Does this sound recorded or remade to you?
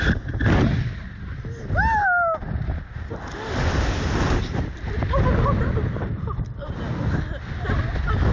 recorded